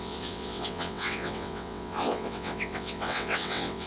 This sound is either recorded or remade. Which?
remade